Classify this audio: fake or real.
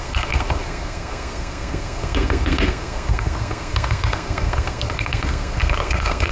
fake